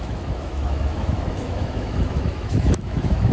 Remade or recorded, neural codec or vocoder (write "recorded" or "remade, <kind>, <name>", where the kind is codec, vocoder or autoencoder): remade, autoencoder, DAC-VAE